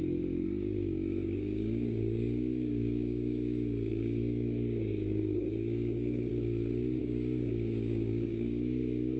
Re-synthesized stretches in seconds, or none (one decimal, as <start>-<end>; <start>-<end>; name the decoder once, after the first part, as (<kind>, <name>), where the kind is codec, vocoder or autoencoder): 0.0-6.3 (codec, DAC); 7.0-9.2